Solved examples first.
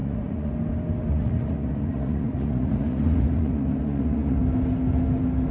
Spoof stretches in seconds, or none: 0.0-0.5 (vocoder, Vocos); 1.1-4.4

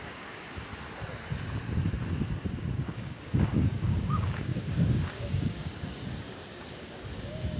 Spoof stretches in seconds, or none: 0.0-0.7 (codec, DAC); 2.5-7.6

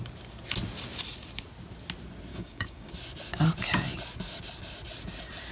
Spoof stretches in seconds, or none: 2.3-2.9 (codec, DAC)

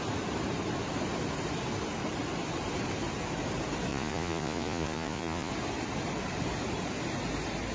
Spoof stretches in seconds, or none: 3.9-5.5 (vocoder, Vocos)

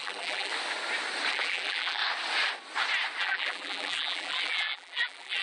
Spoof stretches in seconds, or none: 0.0-0.5 (vocoder, BigVGAN v2); 1.3-2.0; 3.2-5.4

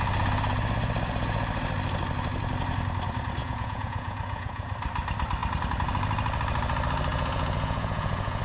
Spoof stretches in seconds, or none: 3.4-4.7 (vocoder, Vocos); 7.1-8.4

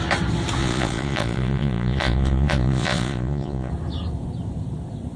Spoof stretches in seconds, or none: 0.6-3.7 (vocoder, Vocos)